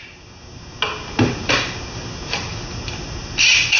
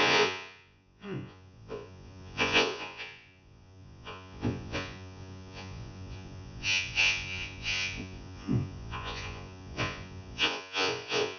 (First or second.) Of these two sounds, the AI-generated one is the second